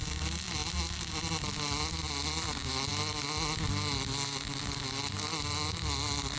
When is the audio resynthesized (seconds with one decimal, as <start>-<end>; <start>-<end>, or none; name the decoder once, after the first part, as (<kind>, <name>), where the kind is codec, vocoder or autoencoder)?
none